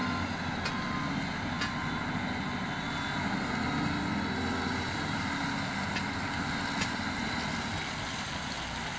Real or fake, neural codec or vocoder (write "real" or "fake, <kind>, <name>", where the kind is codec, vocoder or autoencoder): real